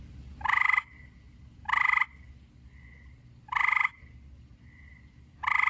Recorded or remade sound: recorded